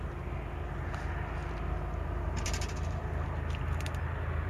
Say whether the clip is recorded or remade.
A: recorded